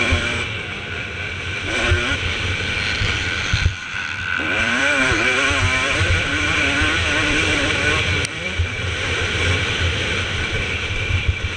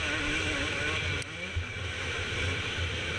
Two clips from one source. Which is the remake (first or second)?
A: first